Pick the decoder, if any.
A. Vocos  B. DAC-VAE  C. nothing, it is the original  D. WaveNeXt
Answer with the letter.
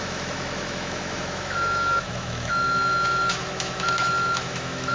B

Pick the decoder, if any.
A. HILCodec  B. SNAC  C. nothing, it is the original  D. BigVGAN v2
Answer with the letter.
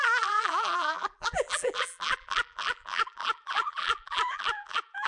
D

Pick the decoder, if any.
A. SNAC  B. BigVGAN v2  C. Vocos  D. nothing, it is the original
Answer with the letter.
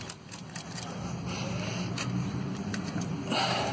D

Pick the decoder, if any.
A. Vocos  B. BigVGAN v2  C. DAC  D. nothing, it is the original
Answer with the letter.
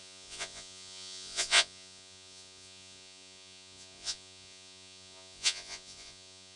A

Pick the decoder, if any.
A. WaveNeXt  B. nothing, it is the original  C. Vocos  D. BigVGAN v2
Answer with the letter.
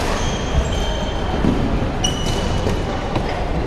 D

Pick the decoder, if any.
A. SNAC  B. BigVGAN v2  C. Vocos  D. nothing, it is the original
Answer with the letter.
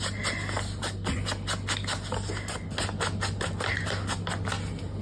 D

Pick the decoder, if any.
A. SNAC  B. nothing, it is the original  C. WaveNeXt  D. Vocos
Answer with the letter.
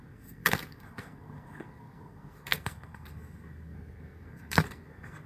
A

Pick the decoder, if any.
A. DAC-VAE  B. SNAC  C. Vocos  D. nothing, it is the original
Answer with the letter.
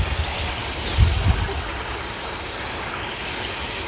D